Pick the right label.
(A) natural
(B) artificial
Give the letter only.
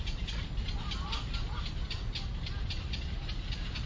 A